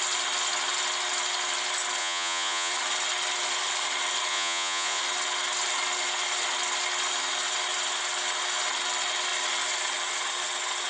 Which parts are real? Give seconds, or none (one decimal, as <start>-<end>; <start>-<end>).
0.0-2.0; 2.7-4.3; 5.0-10.9